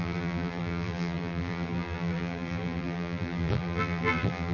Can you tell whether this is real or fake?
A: fake